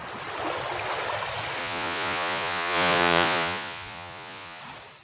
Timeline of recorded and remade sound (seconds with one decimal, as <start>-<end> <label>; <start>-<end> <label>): 0.0-1.6 recorded; 1.6-4.6 remade; 4.6-5.0 recorded